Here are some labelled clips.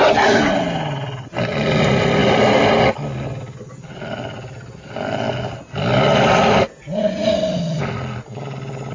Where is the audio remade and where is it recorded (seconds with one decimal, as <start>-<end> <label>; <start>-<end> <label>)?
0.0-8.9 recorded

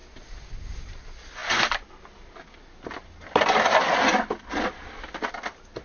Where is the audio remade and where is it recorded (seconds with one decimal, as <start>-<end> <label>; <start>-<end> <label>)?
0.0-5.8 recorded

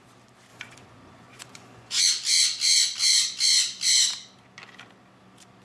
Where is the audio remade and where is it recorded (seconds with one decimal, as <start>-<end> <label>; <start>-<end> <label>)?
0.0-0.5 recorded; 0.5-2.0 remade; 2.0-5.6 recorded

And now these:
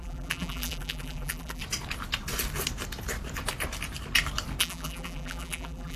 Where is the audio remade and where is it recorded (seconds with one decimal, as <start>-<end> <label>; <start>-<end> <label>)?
0.0-1.6 remade; 1.6-4.6 recorded; 4.6-6.0 remade

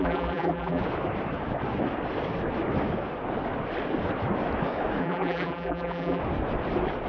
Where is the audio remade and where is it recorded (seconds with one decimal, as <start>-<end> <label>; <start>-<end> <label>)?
0.0-0.8 remade; 0.8-5.0 recorded; 5.0-6.2 remade; 6.2-7.1 recorded